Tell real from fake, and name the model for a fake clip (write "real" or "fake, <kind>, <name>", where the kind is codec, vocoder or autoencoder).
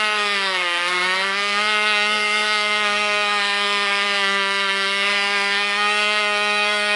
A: fake, codec, SNAC